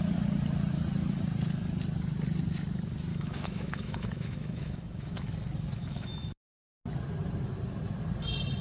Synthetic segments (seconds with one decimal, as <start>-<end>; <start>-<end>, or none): 3.1-5.3; 5.8-6.3